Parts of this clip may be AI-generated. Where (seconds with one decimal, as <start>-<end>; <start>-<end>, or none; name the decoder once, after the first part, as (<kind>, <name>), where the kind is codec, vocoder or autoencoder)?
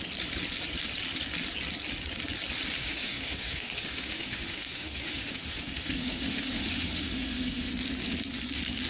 2.8-7.7 (autoencoder, DAC-VAE)